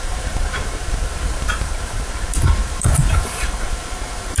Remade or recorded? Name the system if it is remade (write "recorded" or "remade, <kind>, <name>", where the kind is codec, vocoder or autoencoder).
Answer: remade, vocoder, BigVGAN v2